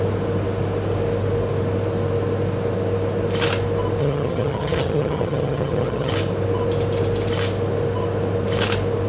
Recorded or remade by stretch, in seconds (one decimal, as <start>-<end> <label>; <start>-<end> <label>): 0.0-4.0 recorded; 4.0-6.1 remade; 6.1-9.1 recorded